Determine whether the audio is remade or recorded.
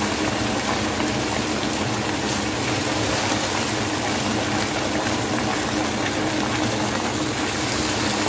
recorded